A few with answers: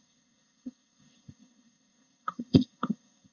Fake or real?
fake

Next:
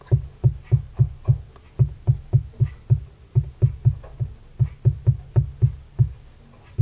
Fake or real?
real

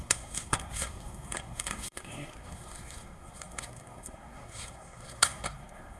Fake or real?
fake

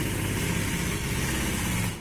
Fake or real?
real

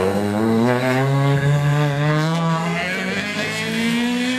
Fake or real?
fake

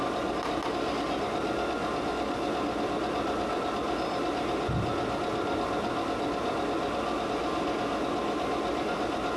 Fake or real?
real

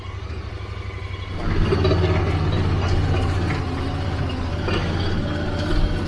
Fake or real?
real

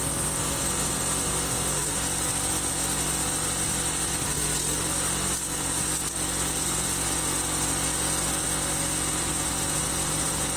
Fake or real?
real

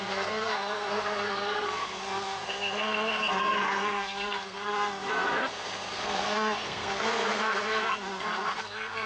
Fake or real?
fake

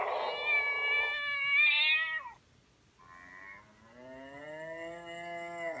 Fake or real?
real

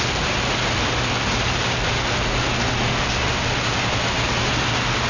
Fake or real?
real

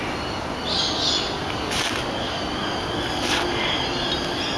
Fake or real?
real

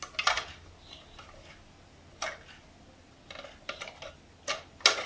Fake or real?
real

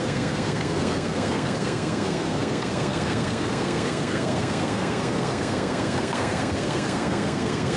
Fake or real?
fake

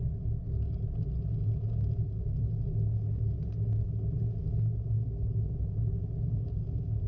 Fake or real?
real